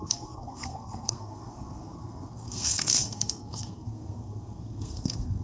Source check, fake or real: fake